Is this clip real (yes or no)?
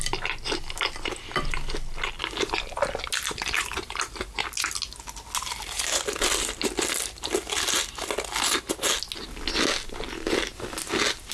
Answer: yes